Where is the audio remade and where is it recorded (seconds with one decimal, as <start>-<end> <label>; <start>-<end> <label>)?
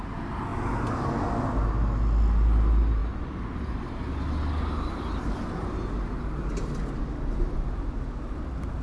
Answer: 0.0-8.8 recorded